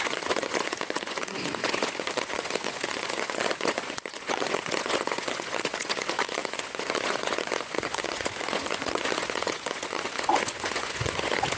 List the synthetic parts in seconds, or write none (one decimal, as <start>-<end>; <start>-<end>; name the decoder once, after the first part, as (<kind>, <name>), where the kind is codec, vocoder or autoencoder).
0.0-11.6 (vocoder, Vocos)